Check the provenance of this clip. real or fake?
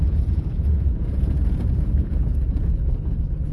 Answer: fake